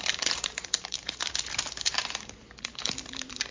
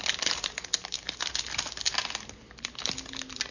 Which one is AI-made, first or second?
first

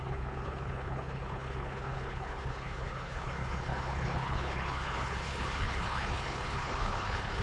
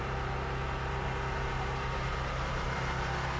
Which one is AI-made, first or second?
first